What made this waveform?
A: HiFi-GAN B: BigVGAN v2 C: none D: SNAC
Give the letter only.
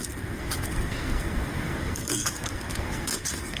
D